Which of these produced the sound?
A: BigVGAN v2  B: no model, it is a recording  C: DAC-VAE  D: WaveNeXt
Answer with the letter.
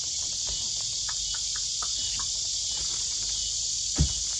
B